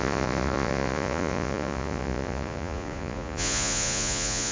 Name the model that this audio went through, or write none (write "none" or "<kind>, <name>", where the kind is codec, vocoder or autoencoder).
vocoder, Vocos